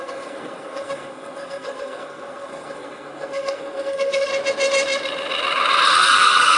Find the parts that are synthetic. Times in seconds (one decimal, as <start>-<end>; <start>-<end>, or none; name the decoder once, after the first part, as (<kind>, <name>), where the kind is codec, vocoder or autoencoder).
0.0-4.3 (codec, SNAC); 5.9-6.6